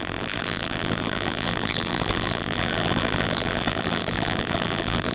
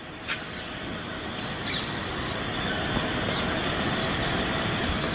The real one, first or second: second